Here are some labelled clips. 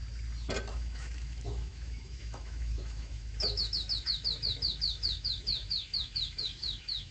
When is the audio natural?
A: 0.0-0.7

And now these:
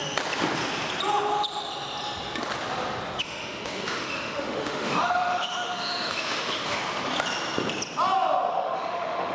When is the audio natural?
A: 0.0-3.2; 6.8-8.5

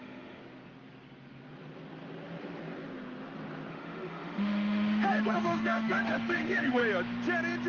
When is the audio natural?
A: 0.4-3.7; 6.8-7.7

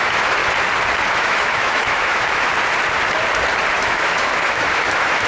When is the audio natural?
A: 0.4-1.1; 2.5-3.7

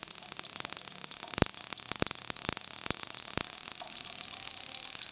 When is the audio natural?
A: 0.0-5.1

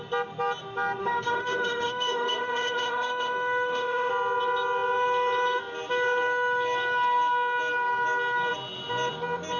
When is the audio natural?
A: 0.0-1.0; 4.1-9.6

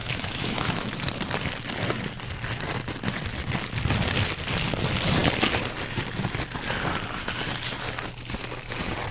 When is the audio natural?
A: 0.9-9.1